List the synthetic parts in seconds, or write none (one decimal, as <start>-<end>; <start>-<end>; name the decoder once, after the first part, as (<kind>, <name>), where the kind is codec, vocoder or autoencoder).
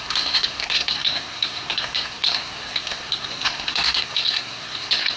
0.0-5.2 (codec, SNAC)